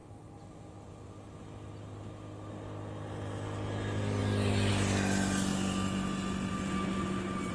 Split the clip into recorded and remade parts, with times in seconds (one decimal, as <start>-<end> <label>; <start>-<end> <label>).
0.0-7.5 recorded